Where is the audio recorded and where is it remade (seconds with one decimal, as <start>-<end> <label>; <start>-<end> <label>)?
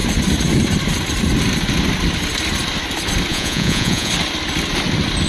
0.0-3.3 recorded; 3.3-4.1 remade; 4.1-5.3 recorded